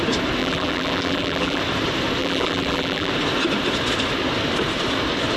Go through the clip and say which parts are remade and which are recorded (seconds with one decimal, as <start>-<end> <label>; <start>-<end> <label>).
0.0-0.4 recorded; 0.4-1.6 remade; 1.6-2.2 recorded; 2.2-3.1 remade; 3.1-5.4 recorded